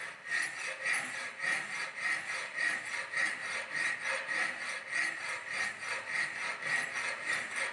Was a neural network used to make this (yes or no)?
no